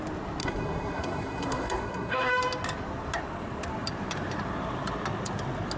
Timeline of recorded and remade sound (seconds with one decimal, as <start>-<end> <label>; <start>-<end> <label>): 0.0-0.4 recorded; 0.4-2.3 remade; 2.3-5.8 recorded